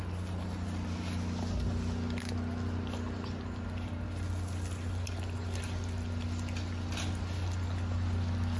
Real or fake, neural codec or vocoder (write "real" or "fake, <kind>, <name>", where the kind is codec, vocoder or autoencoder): real